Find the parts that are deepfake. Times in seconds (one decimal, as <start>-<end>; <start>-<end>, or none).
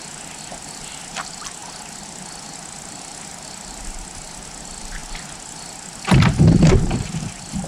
none